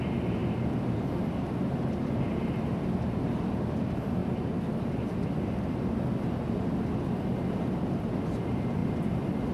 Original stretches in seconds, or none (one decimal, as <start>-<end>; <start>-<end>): 0.0-0.4; 2.3-4.2; 5.7-8.8